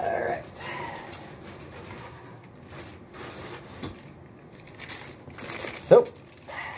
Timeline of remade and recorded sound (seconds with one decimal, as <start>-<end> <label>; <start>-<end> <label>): 0.0-2.0 recorded; 2.0-2.5 remade; 2.5-6.8 recorded